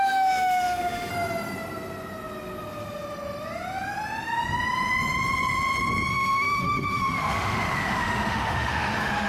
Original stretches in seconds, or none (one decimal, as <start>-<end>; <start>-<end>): 1.1-6.1